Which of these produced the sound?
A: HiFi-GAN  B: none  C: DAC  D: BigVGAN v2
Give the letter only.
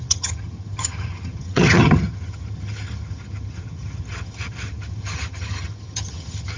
A